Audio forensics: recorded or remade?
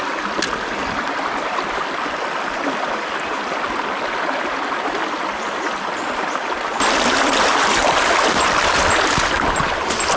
recorded